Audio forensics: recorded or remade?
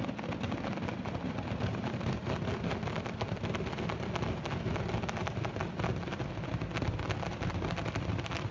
recorded